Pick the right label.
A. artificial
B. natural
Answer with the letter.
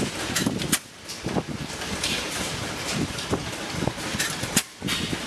B